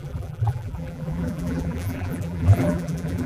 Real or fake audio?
fake